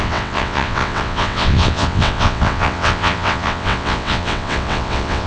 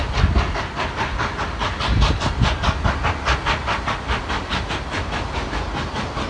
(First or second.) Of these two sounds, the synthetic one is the first